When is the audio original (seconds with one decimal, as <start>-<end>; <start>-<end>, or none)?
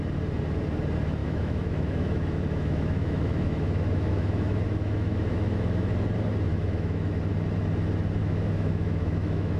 0.0-1.2; 5.9-6.5; 7.2-8.2